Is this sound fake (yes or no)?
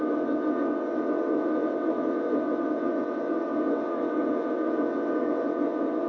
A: yes